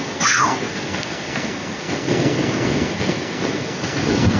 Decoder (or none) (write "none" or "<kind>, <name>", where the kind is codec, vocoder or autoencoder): codec, SNAC